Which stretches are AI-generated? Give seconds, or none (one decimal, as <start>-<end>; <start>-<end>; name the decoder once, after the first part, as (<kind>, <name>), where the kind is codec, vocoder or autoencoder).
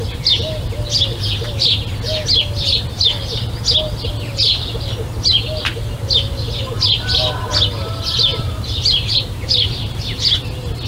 8.3-10.4 (vocoder, BigVGAN v2)